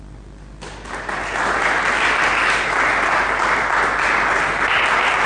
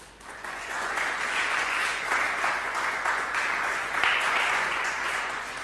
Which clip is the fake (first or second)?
second